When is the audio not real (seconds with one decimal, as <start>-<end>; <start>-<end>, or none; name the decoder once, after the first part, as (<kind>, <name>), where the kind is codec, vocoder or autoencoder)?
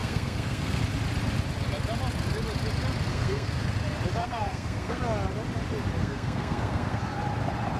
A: 0.0-0.8 (codec, SNAC); 3.1-3.6; 4.2-5.0; 6.0-7.0